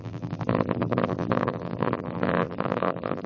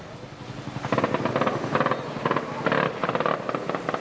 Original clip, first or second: second